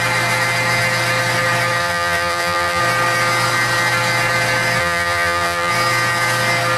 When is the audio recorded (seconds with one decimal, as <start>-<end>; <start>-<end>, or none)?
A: 0.0-1.8; 2.8-4.8; 5.7-6.8